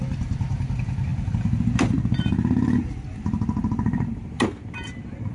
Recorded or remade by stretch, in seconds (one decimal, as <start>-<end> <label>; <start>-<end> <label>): 0.0-5.3 recorded